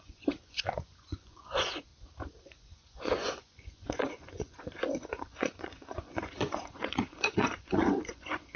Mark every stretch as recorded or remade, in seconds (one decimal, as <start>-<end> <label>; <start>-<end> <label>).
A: 0.0-1.9 remade; 1.9-2.4 recorded; 2.4-8.6 remade